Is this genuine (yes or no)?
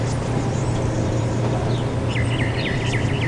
no